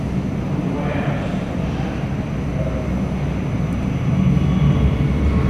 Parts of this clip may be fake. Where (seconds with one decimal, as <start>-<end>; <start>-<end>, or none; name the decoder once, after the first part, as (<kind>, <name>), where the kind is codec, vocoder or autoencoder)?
none